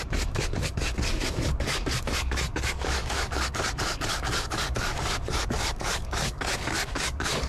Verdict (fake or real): fake